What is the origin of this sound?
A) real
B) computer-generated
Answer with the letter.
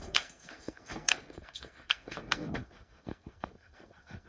B